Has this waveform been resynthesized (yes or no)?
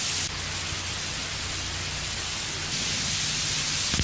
no